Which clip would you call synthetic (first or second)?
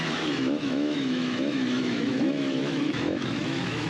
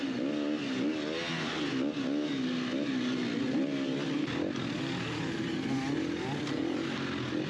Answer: first